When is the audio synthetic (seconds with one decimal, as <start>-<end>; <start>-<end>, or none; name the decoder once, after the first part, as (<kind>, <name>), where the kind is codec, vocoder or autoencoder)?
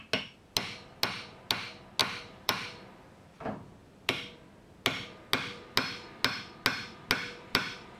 2.0-3.1 (vocoder, BigVGAN v2)